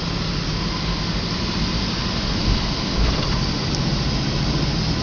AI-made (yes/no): no